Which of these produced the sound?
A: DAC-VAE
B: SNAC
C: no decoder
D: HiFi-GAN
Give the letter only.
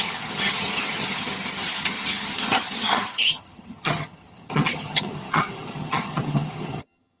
D